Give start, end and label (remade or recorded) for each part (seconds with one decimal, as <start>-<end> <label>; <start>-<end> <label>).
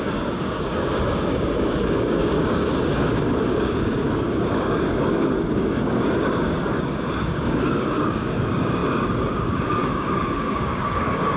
0.0-11.4 remade